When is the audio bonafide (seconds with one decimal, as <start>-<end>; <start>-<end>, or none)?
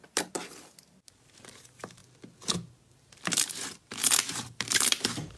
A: 0.0-1.5; 2.0-4.0